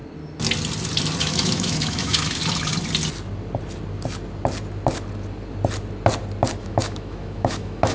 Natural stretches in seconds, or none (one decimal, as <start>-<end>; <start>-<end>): 0.0-1.2; 2.4-6.6